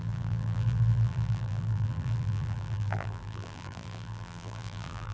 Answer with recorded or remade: remade